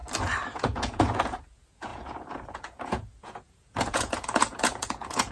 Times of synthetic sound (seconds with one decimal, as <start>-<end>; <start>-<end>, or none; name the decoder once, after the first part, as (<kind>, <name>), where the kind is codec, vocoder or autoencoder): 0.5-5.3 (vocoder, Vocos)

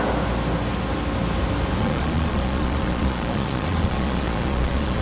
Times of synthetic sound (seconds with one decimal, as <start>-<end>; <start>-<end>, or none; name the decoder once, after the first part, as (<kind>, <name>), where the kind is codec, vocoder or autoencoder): 1.8-5.0 (vocoder, Vocos)

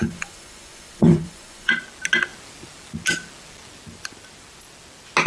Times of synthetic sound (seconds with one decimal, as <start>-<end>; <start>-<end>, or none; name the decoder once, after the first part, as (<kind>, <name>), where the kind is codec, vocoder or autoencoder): 0.0-1.7 (vocoder, Vocos)

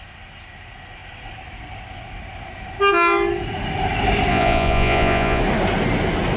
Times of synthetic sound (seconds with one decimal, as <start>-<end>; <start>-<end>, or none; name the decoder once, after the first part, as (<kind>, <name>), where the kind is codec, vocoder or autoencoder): 4.3-5.4 (vocoder, Vocos)

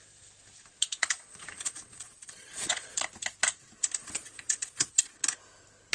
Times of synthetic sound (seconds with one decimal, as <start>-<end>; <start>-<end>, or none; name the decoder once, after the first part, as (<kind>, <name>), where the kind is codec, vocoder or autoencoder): 1.0-3.1 (vocoder, Vocos); 4.0-5.1

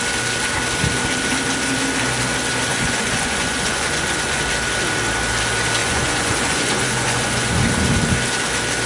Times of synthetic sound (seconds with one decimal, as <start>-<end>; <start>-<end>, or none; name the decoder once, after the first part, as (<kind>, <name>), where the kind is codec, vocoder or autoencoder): 2.7-4.4 (vocoder, Vocos); 5.8-7.6